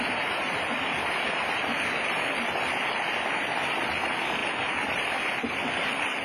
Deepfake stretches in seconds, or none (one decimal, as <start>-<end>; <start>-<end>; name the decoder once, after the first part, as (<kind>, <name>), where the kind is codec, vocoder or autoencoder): none

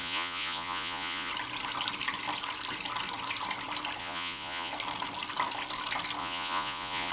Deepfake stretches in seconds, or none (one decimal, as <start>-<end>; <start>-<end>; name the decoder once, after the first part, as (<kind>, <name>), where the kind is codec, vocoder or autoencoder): 0.0-1.3 (vocoder, Vocos); 4.0-4.7; 6.2-7.1

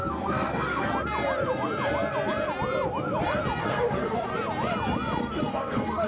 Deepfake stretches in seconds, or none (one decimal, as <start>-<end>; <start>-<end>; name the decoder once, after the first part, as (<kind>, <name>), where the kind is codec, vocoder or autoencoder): 0.0-0.9 (codec, SNAC); 3.6-4.3; 5.2-6.1

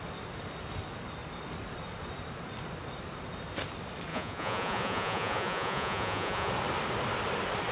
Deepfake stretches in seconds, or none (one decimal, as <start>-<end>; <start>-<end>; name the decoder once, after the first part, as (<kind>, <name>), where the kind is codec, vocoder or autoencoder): 4.1-6.5 (vocoder, Vocos)

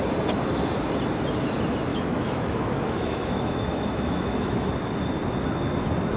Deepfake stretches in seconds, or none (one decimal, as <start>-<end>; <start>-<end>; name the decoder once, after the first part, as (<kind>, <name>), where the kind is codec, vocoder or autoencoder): 1.9-4.7 (autoencoder, DAC-VAE)

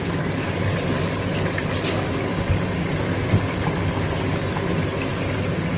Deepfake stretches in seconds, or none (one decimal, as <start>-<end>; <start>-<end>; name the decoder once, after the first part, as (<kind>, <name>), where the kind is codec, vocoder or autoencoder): 2.3-2.9 (codec, DAC); 5.1-5.8